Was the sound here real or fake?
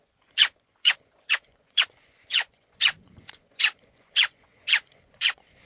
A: fake